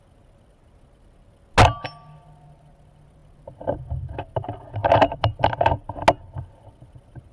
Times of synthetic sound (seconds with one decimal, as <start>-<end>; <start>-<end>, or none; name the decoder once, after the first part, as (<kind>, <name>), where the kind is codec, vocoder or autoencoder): none